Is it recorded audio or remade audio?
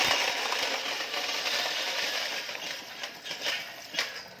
remade